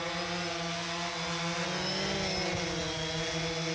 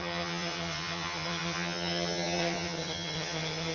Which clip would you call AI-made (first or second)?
second